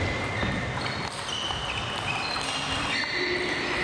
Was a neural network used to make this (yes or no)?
no